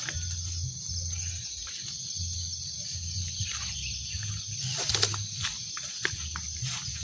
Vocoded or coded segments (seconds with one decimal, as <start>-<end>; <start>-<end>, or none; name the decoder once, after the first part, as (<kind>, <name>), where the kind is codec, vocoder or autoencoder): none